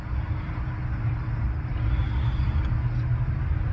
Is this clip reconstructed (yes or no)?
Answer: no